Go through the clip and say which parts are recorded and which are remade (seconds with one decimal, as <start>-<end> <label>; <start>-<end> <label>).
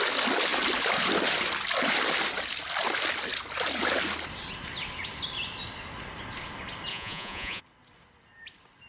0.0-6.9 recorded; 6.9-7.6 remade; 7.6-8.9 recorded